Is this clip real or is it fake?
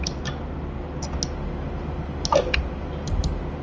real